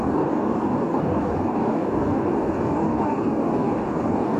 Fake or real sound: fake